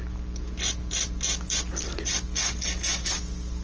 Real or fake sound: real